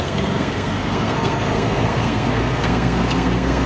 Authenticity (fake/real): fake